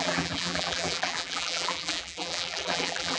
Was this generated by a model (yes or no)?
yes